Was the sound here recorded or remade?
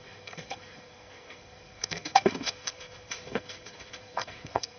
remade